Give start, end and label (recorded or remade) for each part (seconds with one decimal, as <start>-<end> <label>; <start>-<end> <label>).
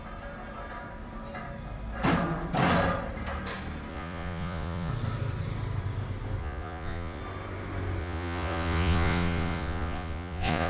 0.0-3.9 recorded; 3.9-4.9 remade; 4.9-6.4 recorded; 6.4-7.2 remade; 7.2-8.0 recorded; 8.0-10.7 remade